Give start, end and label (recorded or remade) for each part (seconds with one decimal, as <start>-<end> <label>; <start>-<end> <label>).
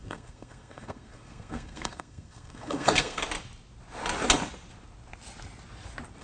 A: 0.0-3.2 remade; 3.2-6.2 recorded